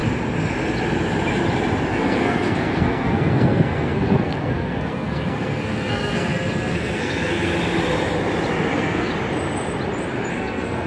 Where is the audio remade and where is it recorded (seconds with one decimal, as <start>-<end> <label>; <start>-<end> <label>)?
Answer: 0.0-1.9 recorded; 1.9-7.5 remade; 7.5-8.7 recorded; 8.7-9.1 remade; 9.1-10.3 recorded; 10.3-10.9 remade